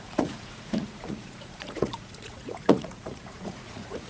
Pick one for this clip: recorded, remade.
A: remade